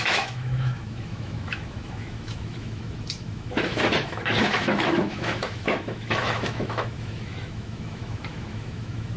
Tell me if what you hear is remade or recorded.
remade